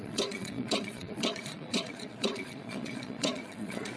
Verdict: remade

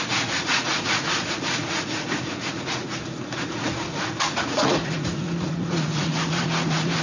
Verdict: remade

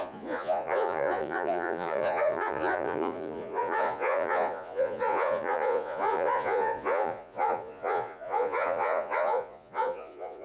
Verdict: remade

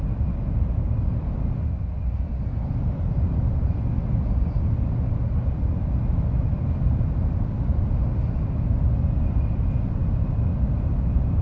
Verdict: recorded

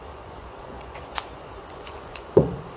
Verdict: remade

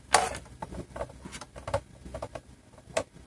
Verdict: recorded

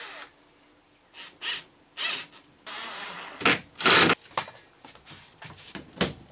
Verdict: recorded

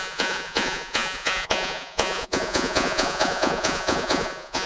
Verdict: remade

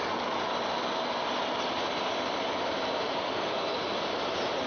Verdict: recorded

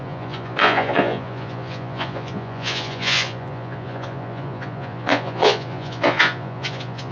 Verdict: remade